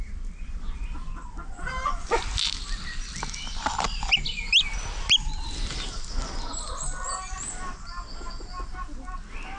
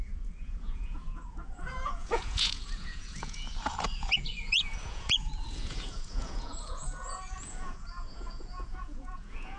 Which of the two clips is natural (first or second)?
first